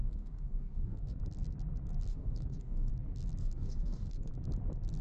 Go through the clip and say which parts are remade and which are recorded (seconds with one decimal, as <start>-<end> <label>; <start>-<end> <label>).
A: 0.0-1.2 remade; 1.2-2.1 recorded; 2.1-2.9 remade; 2.9-3.4 recorded; 3.4-4.3 remade; 4.3-5.0 recorded